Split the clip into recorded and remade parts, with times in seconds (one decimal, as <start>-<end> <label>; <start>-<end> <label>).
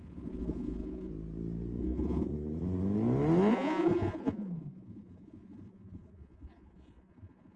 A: 0.0-1.1 remade; 1.1-1.8 recorded; 1.8-2.3 remade; 2.3-3.5 recorded; 3.5-7.6 remade